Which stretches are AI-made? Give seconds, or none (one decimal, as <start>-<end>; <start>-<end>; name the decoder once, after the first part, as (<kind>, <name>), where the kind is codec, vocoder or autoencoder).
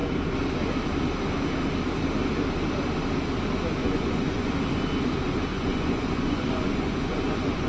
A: 3.8-4.5 (vocoder, Vocos); 5.5-7.7